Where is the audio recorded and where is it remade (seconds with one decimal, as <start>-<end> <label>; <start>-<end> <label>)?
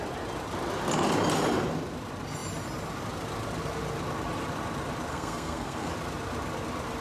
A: 0.0-5.1 recorded; 5.1-5.9 remade; 5.9-7.0 recorded